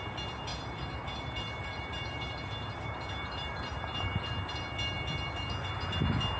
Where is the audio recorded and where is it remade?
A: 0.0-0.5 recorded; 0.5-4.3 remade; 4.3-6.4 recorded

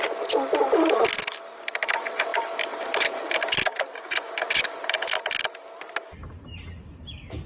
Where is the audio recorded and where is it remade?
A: 0.0-2.3 recorded; 2.3-6.1 remade; 6.1-7.5 recorded

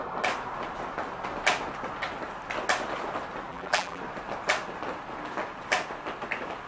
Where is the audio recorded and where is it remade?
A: 0.0-3.5 recorded; 3.5-4.0 remade; 4.0-6.7 recorded